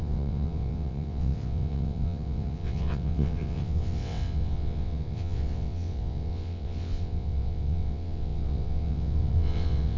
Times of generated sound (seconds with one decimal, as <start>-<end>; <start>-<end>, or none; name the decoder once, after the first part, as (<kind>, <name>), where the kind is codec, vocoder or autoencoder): 0.0-10.0 (vocoder, WaveNeXt)